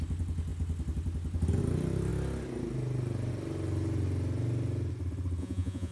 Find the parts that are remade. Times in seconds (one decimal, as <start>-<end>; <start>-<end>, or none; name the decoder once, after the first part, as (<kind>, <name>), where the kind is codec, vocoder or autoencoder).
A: 5.4-5.9 (vocoder, Vocos)